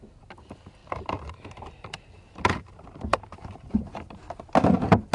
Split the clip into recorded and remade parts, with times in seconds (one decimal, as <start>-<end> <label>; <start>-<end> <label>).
0.0-0.8 recorded; 0.8-2.7 remade; 2.7-3.1 recorded; 3.1-4.5 remade; 4.5-5.1 recorded